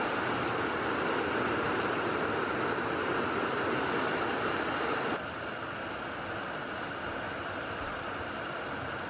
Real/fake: real